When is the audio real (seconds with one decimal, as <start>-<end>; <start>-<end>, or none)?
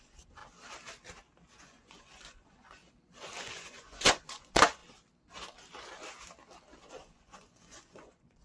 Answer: 0.4-1.6; 2.8-3.4; 4.8-6.9